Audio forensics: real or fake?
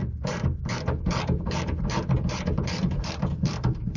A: fake